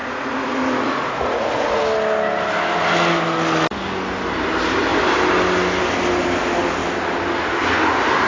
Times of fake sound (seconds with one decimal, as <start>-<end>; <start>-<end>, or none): 0.0-1.8